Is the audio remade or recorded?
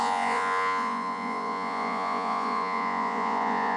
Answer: remade